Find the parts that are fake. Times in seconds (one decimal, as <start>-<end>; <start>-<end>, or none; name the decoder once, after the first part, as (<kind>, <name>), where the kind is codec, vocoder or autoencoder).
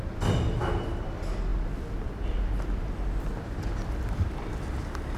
none